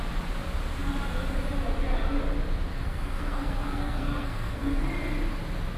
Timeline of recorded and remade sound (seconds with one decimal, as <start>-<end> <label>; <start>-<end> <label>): 0.0-2.7 recorded; 2.7-4.9 remade; 4.9-5.8 recorded